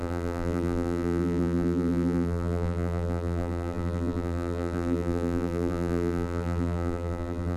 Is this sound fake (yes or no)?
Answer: yes